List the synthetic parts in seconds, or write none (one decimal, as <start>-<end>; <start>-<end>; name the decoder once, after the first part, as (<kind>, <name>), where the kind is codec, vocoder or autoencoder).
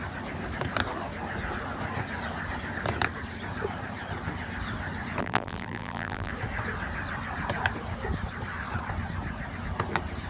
5.2-6.3 (vocoder, BigVGAN v2)